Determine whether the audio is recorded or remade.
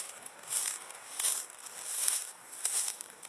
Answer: remade